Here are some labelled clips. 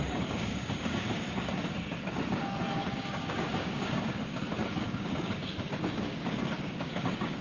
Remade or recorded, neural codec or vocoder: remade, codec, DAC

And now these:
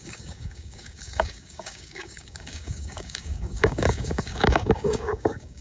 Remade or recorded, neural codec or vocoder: remade, codec, DAC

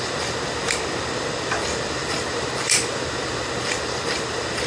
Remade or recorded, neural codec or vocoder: recorded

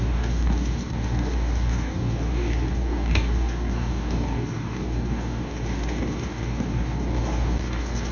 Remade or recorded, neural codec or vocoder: remade, codec, DAC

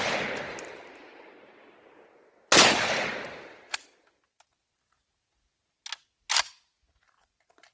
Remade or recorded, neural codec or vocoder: recorded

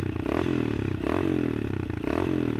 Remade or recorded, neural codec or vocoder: recorded